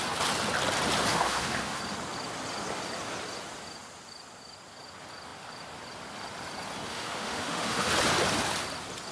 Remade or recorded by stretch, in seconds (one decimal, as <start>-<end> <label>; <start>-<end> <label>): 0.0-1.1 recorded; 1.1-1.8 remade; 1.8-6.9 recorded; 6.9-7.9 remade; 7.9-9.1 recorded